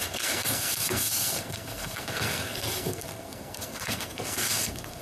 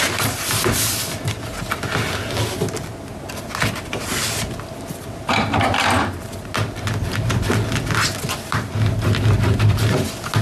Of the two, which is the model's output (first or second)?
first